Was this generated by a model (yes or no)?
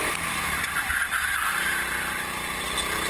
no